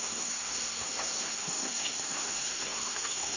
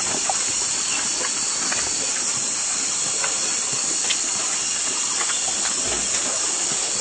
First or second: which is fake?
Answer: first